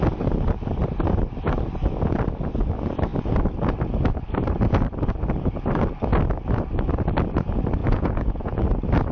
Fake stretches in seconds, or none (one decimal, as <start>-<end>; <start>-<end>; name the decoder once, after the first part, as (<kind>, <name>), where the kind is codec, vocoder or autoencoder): 7.8-8.6 (vocoder, Vocos)

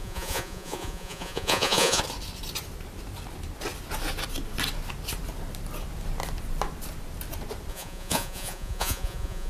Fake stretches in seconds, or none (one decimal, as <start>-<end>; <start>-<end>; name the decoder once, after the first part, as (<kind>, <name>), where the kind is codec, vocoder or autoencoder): 0.0-2.0 (vocoder, Vocos); 7.7-9.5

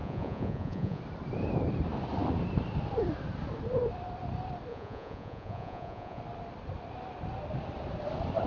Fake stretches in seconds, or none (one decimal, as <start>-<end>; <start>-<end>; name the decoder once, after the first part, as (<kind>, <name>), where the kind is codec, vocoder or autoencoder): 0.0-1.0 (vocoder, Vocos); 4.7-6.2

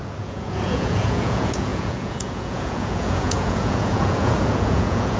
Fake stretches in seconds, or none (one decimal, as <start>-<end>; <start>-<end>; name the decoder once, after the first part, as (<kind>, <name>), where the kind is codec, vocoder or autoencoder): 0.0-5.2 (vocoder, Vocos)

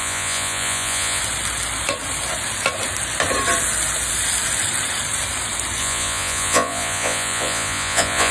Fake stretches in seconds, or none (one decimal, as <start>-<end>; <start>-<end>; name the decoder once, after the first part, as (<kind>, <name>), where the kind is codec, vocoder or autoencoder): 0.0-1.2 (vocoder, Vocos); 5.8-8.3